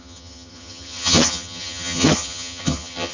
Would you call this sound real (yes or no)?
no